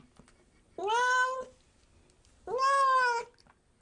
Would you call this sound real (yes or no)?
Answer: yes